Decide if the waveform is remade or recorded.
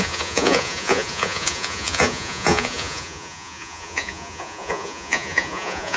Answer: remade